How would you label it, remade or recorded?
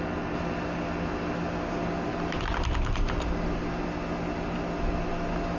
recorded